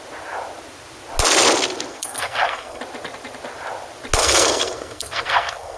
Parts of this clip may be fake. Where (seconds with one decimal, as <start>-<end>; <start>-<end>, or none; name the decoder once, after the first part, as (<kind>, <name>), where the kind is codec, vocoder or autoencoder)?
1.9-2.8 (codec, SNAC); 4.2-5.8